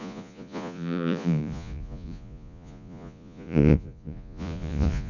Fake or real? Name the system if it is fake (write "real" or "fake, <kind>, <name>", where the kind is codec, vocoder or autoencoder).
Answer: fake, vocoder, Vocos